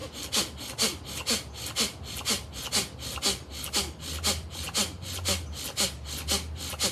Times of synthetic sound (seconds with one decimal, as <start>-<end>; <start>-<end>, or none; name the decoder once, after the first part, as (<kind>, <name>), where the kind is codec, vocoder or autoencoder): none